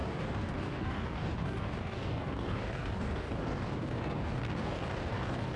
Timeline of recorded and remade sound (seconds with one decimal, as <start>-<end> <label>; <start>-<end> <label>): 0.0-5.6 remade